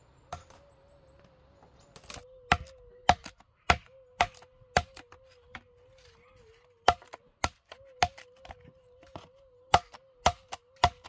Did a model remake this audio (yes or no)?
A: no